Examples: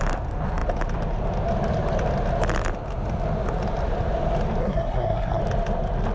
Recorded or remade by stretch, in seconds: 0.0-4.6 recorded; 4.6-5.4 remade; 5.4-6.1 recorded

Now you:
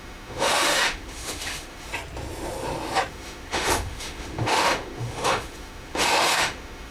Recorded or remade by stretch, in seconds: 0.0-1.9 remade; 1.9-3.1 recorded; 3.1-6.9 remade

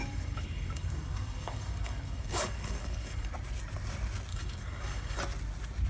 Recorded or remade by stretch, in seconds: 0.0-3.3 remade; 3.3-4.3 recorded; 4.3-5.2 remade; 5.2-5.9 recorded

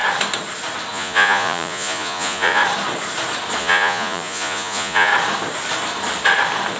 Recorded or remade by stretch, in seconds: 0.0-0.9 recorded; 0.9-2.6 remade; 2.6-3.6 recorded; 3.6-5.1 remade; 5.1-6.8 recorded

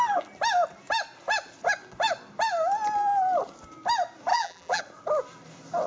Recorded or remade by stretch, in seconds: 0.0-4.3 recorded; 4.3-4.8 remade; 4.8-5.9 recorded

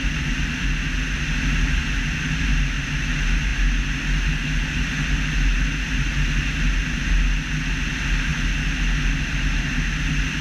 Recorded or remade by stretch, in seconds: 0.0-10.4 recorded

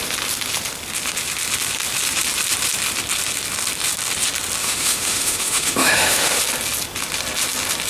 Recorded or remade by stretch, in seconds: 0.0-4.6 recorded; 4.6-6.4 remade; 6.4-7.9 recorded

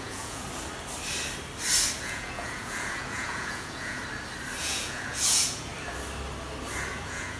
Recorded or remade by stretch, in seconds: 0.0-0.4 remade; 0.4-2.0 recorded; 2.0-4.0 remade; 4.0-4.6 recorded; 4.6-5.7 remade; 5.7-6.9 recorded; 6.9-7.4 remade